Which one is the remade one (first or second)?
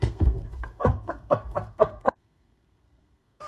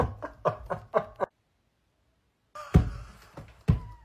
first